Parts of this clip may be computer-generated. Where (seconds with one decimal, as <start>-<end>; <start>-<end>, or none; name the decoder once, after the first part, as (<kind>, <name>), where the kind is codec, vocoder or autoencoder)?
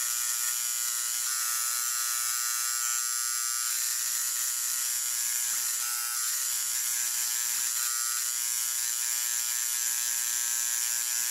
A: 1.3-1.9 (vocoder, BigVGAN v2); 4.2-7.3